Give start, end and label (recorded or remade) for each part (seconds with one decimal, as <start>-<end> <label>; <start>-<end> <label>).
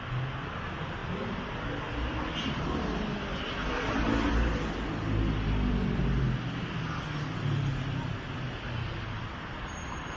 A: 0.0-10.2 recorded